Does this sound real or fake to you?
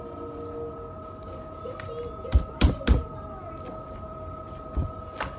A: real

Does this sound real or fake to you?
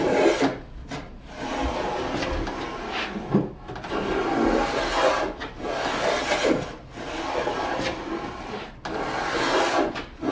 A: real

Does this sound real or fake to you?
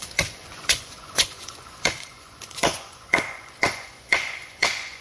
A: fake